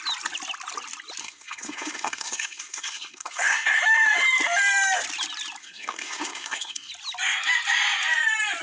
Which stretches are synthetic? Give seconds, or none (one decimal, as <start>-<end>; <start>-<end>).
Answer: 1.2-3.8; 5.6-6.9